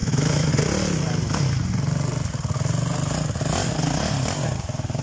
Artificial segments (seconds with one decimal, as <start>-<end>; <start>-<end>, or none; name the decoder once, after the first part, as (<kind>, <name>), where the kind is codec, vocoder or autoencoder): 0.0-0.5 (autoencoder, DAC-VAE)